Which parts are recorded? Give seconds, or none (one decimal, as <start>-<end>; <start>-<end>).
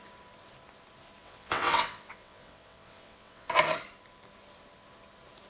0.0-1.2; 3.5-5.5